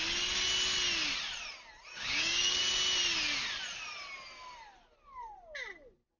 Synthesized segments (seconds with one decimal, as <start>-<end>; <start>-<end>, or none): 1.9-2.6